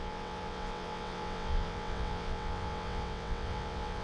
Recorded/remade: remade